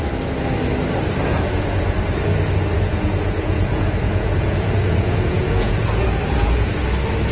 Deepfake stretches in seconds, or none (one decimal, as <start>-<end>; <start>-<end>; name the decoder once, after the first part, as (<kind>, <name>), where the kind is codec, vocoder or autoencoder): 1.3-1.9 (vocoder, Vocos); 2.9-6.8

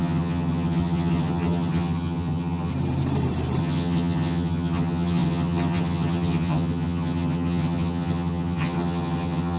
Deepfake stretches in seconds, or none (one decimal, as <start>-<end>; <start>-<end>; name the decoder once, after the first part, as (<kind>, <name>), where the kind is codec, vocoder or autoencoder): 0.0-2.7 (vocoder, HiFi-GAN); 3.6-9.6